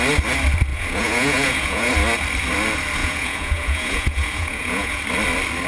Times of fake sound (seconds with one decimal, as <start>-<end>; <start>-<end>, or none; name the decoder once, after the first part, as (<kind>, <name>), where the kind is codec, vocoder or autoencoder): 0.7-1.9 (vocoder, Vocos); 3.0-5.0

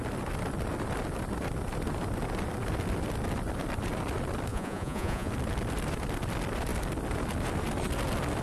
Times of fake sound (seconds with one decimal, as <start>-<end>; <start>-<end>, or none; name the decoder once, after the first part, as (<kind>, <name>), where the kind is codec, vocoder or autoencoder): 4.5-5.3 (vocoder, Vocos)

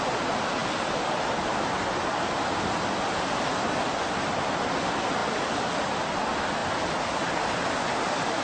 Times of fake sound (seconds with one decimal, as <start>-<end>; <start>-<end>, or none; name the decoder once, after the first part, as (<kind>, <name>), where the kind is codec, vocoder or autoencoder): none

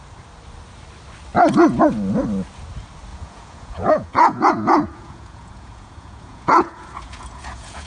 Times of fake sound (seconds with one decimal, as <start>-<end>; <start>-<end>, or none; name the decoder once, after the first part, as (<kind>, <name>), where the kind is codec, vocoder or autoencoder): 3.1-7.9 (vocoder, Vocos)

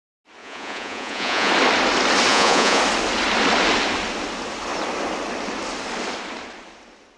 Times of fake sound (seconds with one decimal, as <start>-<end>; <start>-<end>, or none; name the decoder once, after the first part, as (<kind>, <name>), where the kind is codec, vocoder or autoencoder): 0.4-1.5 (vocoder, Vocos); 2.3-2.8